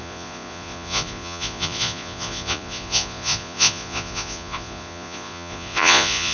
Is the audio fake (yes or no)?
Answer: yes